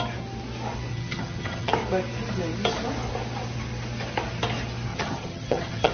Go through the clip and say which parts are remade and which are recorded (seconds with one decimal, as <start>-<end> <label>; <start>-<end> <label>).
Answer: 0.0-0.9 recorded; 0.9-1.7 remade; 1.7-4.9 recorded; 4.9-5.9 remade